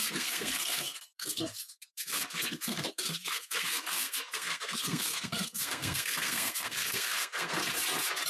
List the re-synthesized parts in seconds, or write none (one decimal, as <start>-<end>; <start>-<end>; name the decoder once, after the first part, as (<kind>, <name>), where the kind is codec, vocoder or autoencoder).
0.0-7.6 (codec, SNAC)